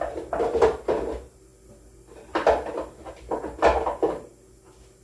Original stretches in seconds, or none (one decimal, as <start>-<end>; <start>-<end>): 0.0-5.0